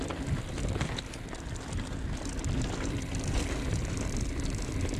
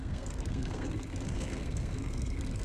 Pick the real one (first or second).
first